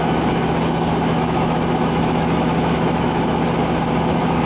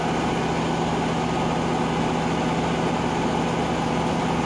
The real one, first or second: second